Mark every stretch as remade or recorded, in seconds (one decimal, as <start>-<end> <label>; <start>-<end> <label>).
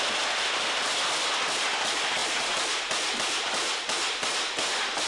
0.0-5.1 recorded